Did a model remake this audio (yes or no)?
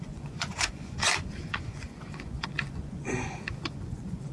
yes